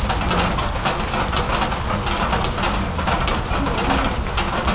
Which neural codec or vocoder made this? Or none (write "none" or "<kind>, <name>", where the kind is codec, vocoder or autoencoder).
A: none